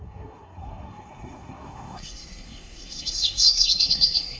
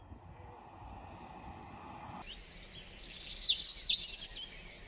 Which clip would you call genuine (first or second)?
second